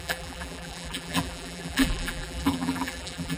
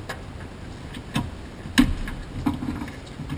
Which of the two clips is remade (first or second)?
first